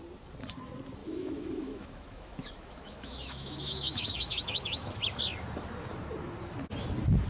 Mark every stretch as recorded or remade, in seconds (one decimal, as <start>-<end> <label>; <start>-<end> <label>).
0.0-1.0 recorded; 1.0-5.2 remade; 5.2-7.3 recorded